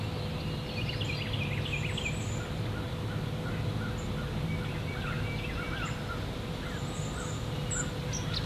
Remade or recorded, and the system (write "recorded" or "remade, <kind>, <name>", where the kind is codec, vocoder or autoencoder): recorded